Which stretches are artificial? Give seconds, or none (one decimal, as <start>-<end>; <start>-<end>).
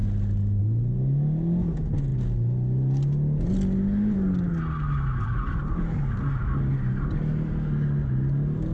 none